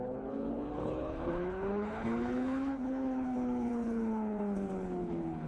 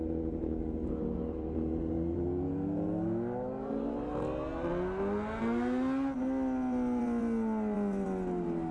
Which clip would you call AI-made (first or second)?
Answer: first